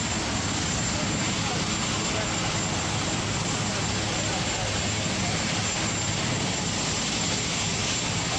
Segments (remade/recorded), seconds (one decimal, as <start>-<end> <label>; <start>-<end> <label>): 0.0-8.4 recorded